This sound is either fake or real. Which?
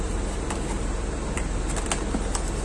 real